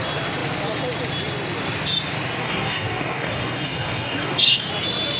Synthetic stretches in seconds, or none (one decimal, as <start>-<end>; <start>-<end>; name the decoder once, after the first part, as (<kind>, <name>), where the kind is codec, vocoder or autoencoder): 2.4-4.7 (codec, DAC)